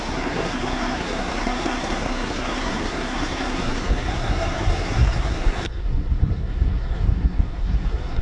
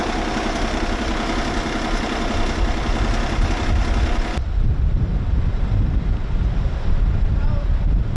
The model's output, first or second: first